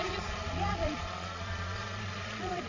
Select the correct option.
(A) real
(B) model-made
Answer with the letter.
B